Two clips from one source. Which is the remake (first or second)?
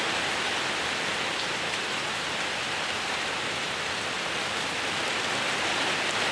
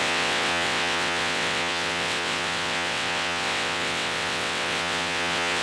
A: second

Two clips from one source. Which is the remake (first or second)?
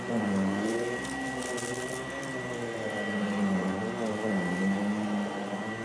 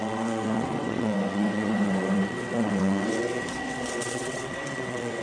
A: second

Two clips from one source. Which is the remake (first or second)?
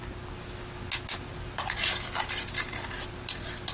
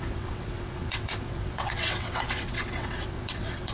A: second